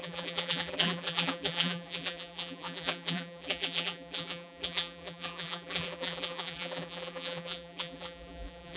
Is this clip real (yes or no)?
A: no